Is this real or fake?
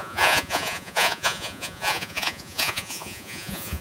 fake